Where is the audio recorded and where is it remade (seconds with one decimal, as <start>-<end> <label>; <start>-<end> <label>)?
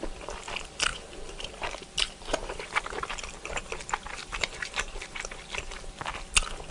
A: 0.0-0.9 recorded; 0.9-2.8 remade; 2.8-4.2 recorded; 4.2-5.4 remade; 5.4-6.7 recorded